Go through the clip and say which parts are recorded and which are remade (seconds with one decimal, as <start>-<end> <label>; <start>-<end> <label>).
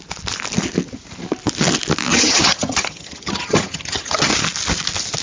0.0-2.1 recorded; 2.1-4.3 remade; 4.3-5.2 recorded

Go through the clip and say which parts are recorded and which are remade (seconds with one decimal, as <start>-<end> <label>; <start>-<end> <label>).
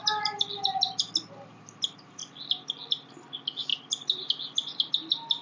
0.0-5.4 recorded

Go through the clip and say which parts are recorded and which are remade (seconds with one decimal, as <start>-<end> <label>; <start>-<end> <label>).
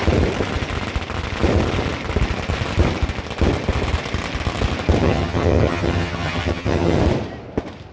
0.0-5.0 recorded; 5.0-7.0 remade; 7.0-7.9 recorded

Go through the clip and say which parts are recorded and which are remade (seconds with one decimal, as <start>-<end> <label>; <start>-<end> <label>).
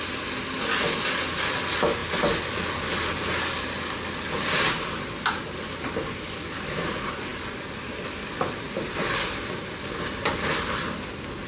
0.0-11.5 recorded